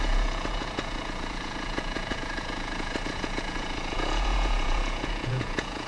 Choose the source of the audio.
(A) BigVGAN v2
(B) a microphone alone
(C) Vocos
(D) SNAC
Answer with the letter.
C